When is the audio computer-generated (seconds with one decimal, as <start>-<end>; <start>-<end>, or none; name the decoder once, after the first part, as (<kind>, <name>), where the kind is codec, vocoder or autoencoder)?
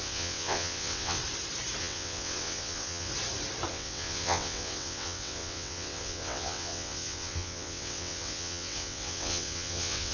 0.0-1.2 (vocoder, WaveNeXt); 1.8-3.1; 3.7-10.1